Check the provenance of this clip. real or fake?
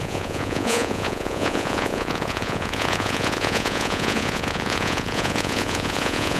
fake